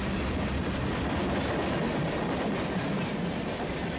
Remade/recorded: recorded